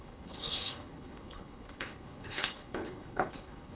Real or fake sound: fake